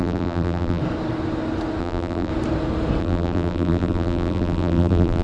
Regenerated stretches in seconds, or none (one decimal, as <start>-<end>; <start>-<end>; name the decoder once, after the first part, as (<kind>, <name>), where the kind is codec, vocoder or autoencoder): 0.0-0.8 (vocoder, BigVGAN v2); 1.8-2.3; 3.0-5.2